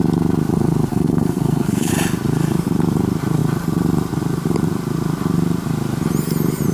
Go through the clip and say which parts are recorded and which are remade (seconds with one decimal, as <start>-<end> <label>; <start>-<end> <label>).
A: 0.0-0.9 recorded; 0.9-1.9 remade; 1.9-6.7 recorded